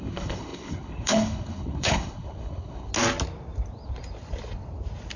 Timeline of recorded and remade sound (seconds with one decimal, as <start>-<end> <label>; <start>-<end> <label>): 0.0-2.9 remade; 2.9-5.2 recorded